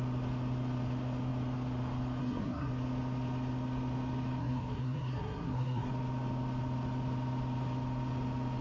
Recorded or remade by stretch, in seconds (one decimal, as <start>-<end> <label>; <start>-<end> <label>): 0.0-2.2 recorded; 2.2-2.7 remade; 2.7-4.4 recorded; 4.4-5.9 remade; 5.9-8.6 recorded